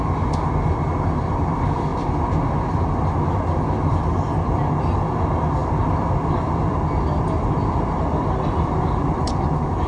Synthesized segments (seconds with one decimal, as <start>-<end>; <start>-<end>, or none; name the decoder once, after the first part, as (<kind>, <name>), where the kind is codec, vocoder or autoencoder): 5.6-9.3 (vocoder, BigVGAN v2)